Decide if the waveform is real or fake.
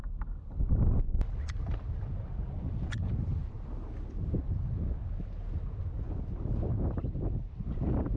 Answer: real